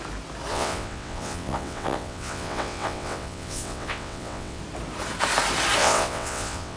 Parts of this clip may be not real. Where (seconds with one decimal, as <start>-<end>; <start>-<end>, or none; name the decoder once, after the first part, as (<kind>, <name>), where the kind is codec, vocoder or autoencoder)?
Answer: 0.5-4.6 (vocoder, WaveNeXt); 5.8-6.8